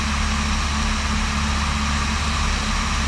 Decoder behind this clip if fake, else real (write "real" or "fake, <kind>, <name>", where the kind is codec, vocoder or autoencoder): real